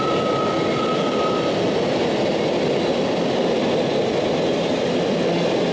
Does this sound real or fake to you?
real